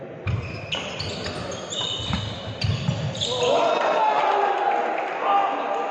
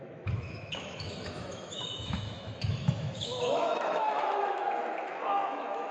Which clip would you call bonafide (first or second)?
first